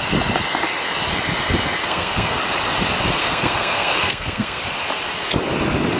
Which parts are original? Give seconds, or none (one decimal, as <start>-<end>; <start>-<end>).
0.0-1.8; 2.4-3.2; 4.6-6.0